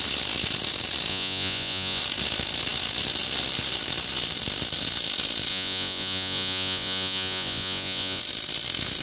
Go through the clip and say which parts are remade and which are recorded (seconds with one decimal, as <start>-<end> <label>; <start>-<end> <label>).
0.0-1.1 recorded; 1.1-2.0 remade; 2.0-5.5 recorded; 5.5-8.2 remade; 8.2-9.0 recorded